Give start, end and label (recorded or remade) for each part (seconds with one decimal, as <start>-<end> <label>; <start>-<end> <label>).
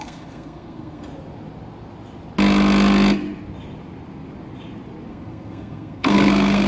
0.0-1.1 remade; 1.1-5.1 recorded; 5.1-6.7 remade